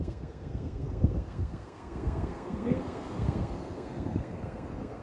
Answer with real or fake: fake